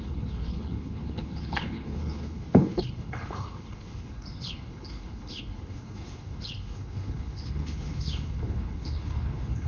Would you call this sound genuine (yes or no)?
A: no